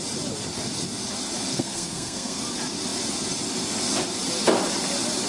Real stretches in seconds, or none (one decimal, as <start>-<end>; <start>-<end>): 0.0-1.5; 2.4-5.3